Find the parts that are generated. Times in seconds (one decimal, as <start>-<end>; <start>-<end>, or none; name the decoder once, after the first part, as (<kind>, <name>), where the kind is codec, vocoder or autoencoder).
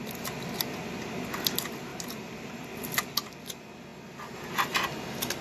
1.9-2.7 (vocoder, BigVGAN v2)